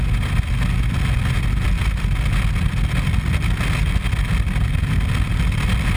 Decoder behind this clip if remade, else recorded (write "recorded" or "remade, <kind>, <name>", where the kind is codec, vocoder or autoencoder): recorded